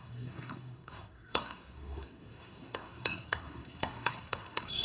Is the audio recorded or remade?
remade